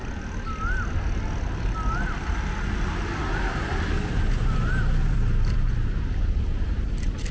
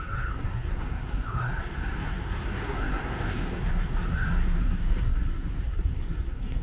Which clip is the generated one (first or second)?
second